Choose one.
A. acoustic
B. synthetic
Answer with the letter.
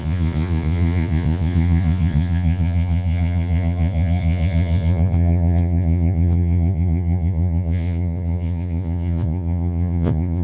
B